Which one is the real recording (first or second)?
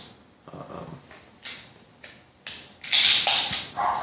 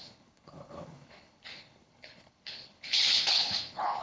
first